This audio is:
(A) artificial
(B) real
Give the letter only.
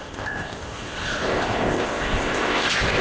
A